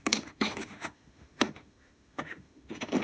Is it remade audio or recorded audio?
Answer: remade